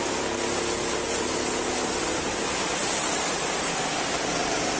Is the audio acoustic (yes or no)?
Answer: yes